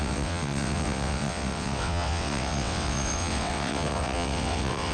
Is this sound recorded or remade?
remade